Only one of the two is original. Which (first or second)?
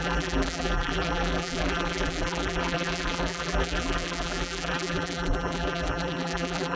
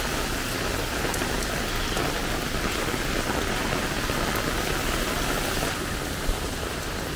second